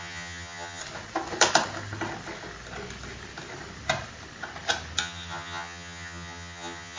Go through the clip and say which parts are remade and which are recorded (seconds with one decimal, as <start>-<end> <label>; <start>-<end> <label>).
0.0-0.8 remade; 0.8-5.0 recorded; 5.0-7.0 remade